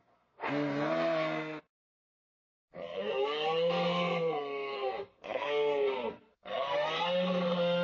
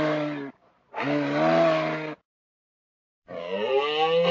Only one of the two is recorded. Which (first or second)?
second